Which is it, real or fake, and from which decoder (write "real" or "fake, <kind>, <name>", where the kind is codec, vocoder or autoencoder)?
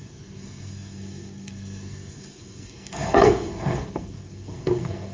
fake, codec, SNAC